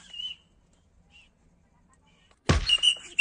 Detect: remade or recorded recorded